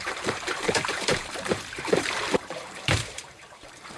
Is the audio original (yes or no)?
no